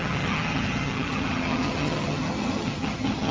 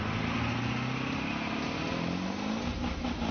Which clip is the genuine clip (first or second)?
second